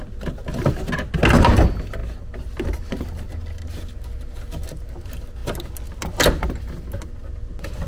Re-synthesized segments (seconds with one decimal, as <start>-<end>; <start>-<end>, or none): none